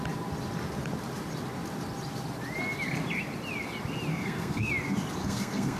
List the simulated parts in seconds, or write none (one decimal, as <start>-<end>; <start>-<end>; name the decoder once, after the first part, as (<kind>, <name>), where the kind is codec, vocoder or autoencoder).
4.1-4.7 (codec, SNAC); 5.2-5.8